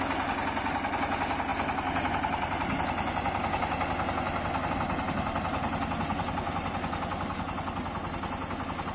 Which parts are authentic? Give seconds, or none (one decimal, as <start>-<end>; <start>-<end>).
0.0-8.9